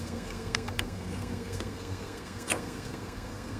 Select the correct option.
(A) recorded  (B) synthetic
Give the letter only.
B